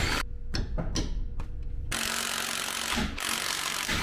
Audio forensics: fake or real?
real